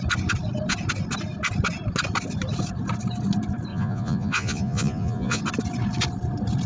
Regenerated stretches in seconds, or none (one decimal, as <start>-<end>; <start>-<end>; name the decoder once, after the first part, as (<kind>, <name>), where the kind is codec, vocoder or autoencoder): 3.7-5.4 (vocoder, Vocos)